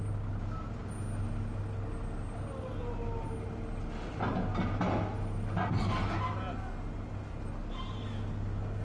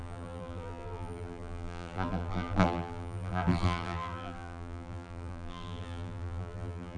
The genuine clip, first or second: first